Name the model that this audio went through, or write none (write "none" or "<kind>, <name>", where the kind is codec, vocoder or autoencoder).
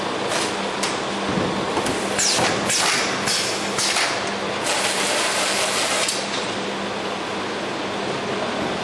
none